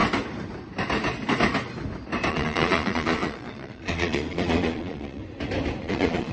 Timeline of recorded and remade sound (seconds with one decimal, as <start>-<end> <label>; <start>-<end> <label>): 0.0-2.3 recorded; 2.3-5.2 remade; 5.2-5.8 recorded; 5.8-6.3 remade